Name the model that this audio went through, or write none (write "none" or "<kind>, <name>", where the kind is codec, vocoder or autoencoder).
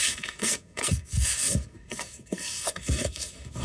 codec, SNAC